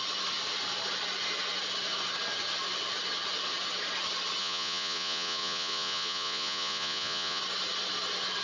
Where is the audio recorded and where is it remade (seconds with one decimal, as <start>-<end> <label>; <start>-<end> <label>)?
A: 0.0-4.4 recorded; 4.4-7.4 remade; 7.4-8.4 recorded